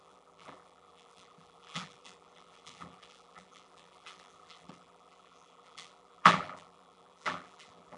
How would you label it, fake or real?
fake